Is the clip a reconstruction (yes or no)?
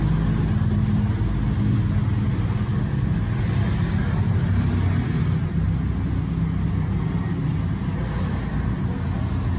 no